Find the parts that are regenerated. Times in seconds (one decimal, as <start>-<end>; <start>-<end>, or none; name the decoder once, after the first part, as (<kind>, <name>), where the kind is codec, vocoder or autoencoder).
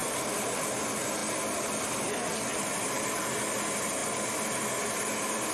0.0-0.7 (vocoder, BigVGAN v2); 2.5-3.3